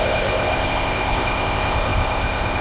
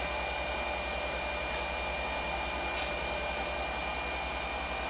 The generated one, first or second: first